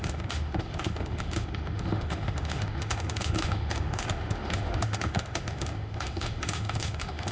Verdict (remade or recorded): remade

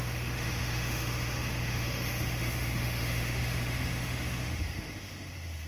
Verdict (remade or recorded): remade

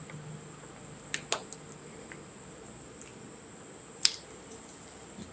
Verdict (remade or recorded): recorded